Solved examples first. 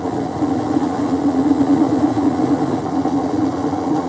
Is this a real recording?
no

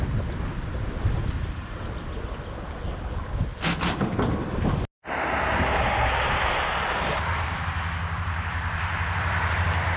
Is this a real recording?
yes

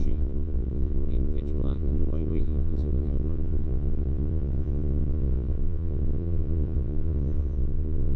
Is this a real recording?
no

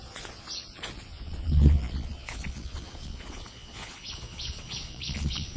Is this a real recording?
no